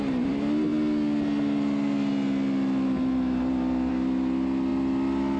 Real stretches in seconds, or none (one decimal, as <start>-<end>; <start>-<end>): 0.0-5.4